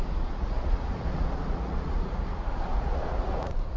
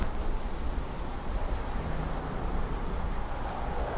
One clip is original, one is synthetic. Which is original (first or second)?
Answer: second